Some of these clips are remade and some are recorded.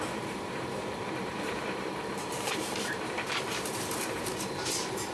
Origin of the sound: remade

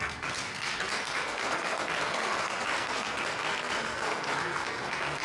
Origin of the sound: remade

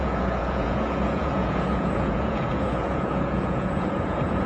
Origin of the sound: remade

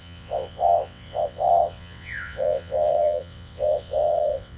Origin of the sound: remade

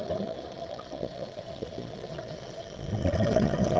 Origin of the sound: remade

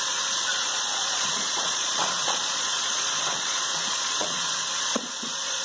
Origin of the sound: remade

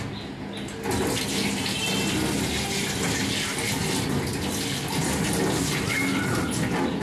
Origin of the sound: recorded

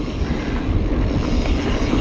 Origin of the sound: recorded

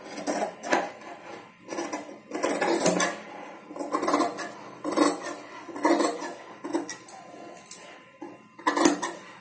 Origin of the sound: recorded